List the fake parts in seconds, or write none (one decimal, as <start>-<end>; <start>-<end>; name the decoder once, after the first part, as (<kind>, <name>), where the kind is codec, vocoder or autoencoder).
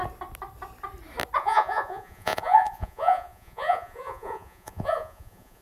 1.4-5.6 (vocoder, Vocos)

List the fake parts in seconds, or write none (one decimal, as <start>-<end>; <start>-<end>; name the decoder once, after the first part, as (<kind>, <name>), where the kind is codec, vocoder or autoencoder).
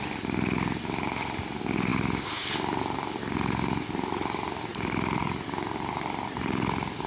4.7-5.9 (vocoder, BigVGAN v2)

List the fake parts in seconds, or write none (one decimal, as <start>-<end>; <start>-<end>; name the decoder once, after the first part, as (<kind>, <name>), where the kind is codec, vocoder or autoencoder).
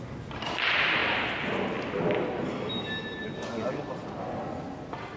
none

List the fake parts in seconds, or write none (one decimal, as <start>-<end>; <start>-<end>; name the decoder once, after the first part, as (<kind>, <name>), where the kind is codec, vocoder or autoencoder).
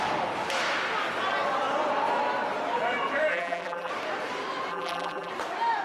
3.3-3.9 (vocoder, BigVGAN v2); 4.7-5.3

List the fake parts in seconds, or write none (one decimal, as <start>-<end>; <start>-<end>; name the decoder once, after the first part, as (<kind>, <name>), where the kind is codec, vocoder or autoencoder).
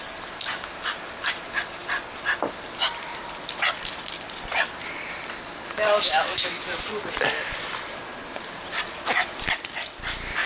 none